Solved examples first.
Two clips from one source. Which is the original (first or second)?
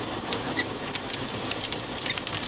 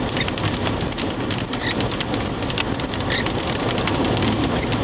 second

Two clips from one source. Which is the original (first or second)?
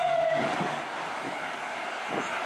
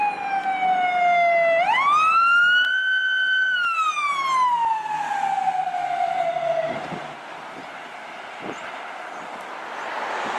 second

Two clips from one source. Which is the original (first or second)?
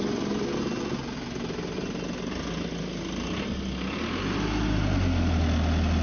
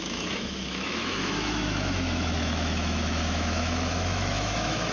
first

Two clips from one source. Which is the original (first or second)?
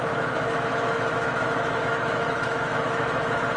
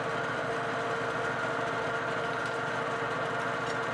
second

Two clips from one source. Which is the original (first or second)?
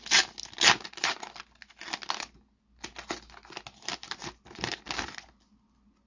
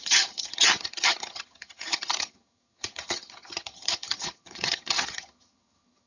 first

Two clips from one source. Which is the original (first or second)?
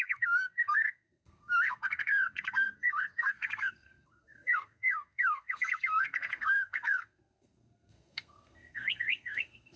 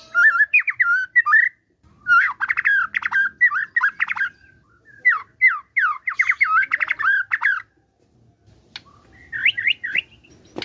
second